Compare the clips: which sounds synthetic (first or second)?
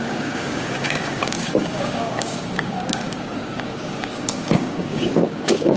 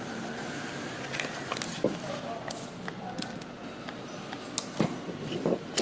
first